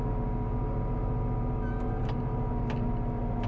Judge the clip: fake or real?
real